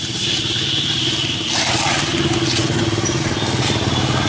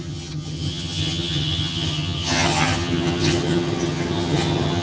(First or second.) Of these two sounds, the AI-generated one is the second